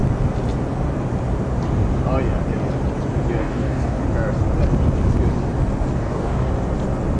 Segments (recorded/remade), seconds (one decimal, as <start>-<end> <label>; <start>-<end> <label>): 0.0-3.4 recorded; 3.4-4.0 remade; 4.0-6.0 recorded; 6.0-6.5 remade; 6.5-7.2 recorded

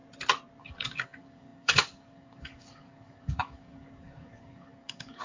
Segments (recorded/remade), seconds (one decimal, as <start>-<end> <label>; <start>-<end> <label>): 0.0-0.6 recorded; 0.6-5.2 remade

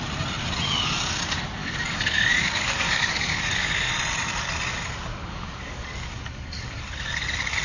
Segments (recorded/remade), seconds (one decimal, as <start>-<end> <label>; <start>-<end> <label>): 0.0-1.6 recorded; 1.6-3.9 remade; 3.9-5.1 recorded; 5.1-6.8 remade; 6.8-7.6 recorded

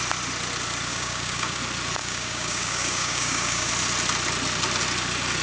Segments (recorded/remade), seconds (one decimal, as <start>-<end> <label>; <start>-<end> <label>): 0.0-0.9 recorded; 0.9-1.6 remade; 1.6-2.0 recorded; 2.0-3.7 remade; 3.7-5.4 recorded